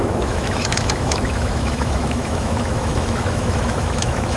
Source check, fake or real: fake